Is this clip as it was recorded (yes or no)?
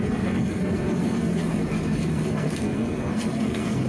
no